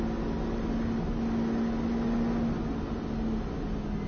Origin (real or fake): real